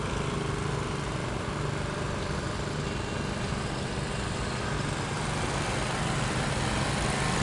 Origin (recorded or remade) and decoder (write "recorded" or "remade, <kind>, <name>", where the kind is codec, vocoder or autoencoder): recorded